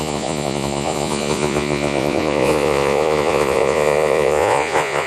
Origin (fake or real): fake